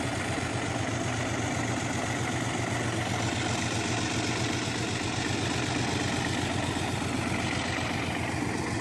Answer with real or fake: real